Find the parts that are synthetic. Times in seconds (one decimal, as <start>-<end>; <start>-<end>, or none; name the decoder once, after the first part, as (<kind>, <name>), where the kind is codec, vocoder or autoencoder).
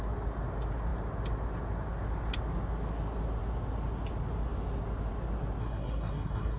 5.6-6.6 (codec, SNAC)